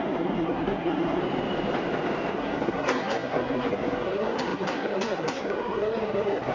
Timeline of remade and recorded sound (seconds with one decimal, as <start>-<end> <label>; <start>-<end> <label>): 0.0-1.2 remade; 1.2-2.3 recorded; 2.3-6.5 remade